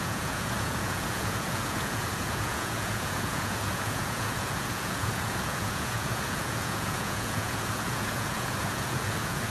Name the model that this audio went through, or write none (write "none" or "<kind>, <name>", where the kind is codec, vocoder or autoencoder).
vocoder, Vocos